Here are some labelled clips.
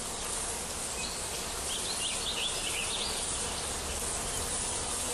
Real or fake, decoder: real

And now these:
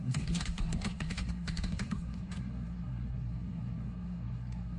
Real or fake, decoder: fake, codec, SNAC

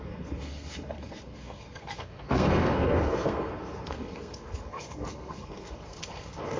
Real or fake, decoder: fake, codec, SNAC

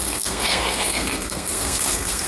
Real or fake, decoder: fake, codec, SNAC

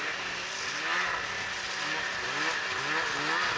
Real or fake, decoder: real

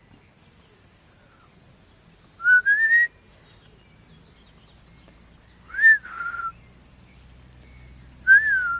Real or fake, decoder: real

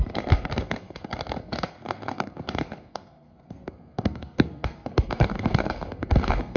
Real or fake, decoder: fake, codec, SNAC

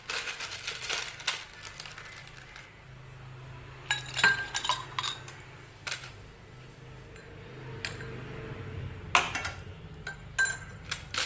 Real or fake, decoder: real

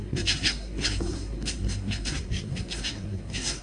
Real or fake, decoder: fake, codec, SNAC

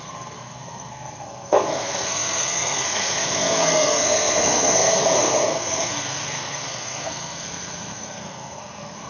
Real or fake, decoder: fake, codec, SNAC